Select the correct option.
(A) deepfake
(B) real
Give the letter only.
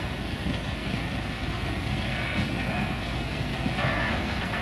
A